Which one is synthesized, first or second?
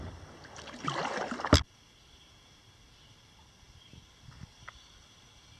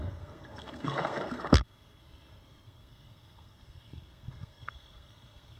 second